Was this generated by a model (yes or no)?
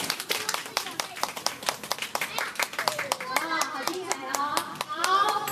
yes